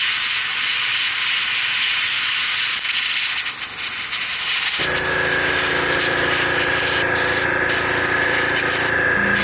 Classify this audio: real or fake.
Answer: real